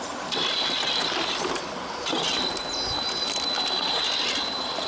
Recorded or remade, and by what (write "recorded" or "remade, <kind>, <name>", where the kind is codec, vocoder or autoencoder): recorded